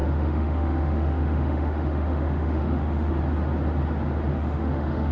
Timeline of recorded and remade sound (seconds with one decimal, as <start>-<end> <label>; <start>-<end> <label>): 0.0-3.1 remade; 3.1-4.3 recorded; 4.3-5.1 remade